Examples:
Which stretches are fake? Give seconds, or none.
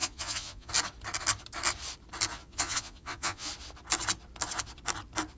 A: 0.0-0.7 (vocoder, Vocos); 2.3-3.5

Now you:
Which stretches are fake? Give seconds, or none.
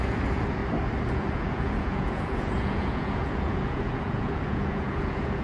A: 0.0-0.6 (vocoder, Vocos); 1.1-5.4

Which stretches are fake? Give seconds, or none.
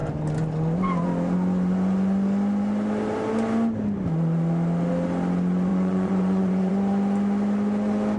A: 5.7-6.7 (vocoder, Vocos)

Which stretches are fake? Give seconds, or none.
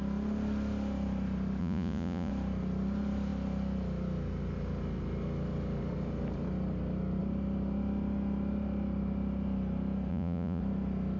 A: 1.6-2.3 (vocoder, Vocos); 10.1-10.6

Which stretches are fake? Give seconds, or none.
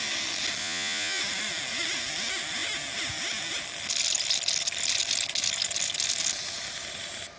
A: 0.6-1.2 (vocoder, Vocos)